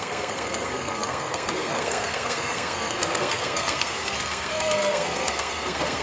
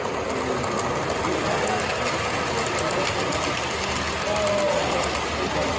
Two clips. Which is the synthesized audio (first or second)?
first